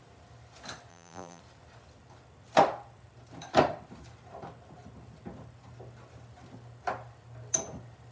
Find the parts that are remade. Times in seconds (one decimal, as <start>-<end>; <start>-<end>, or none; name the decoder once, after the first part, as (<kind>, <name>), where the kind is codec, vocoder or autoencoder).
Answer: 0.9-1.4 (vocoder, BigVGAN v2)